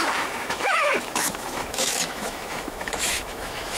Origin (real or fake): fake